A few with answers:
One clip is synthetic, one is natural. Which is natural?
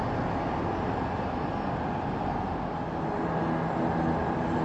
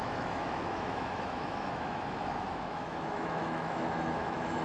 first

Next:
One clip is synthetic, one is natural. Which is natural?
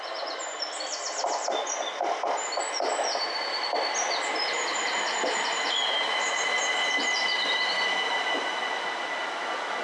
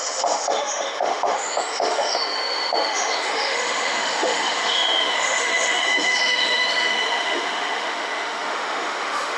first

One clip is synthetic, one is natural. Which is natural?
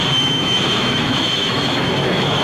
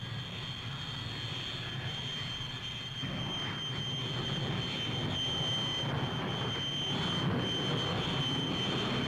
second